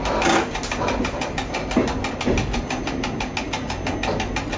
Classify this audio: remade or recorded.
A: recorded